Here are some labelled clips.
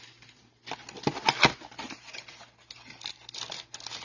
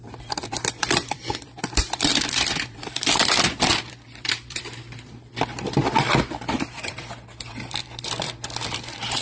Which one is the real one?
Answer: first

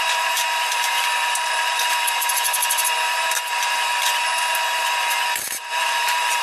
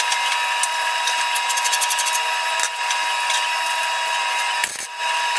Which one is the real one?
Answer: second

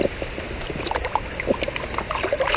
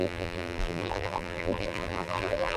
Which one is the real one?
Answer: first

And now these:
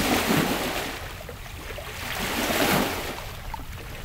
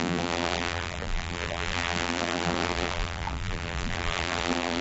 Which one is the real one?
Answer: first